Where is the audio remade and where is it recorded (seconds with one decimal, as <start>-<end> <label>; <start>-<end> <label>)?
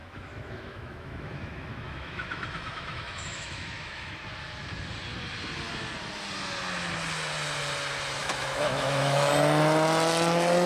0.0-4.1 remade; 4.1-8.2 recorded; 8.2-9.3 remade; 9.3-10.7 recorded